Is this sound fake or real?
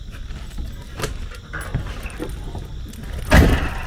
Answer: real